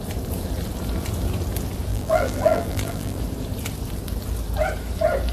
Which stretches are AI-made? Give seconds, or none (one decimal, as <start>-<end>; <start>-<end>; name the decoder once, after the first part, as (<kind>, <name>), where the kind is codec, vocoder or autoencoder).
1.9-3.2 (vocoder, BigVGAN v2)